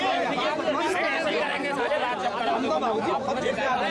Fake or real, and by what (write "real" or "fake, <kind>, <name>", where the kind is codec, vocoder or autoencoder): real